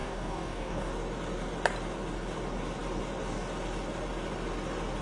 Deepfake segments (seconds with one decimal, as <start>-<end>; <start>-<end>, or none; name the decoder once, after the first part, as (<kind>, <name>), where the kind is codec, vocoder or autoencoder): 0.0-0.9 (codec, DAC)